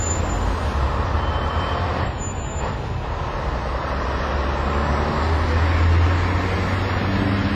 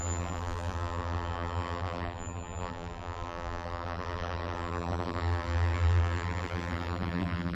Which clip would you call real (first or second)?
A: first